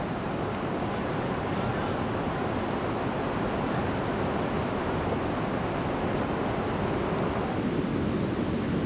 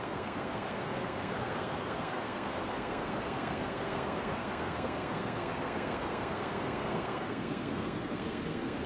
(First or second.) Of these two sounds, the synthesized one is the second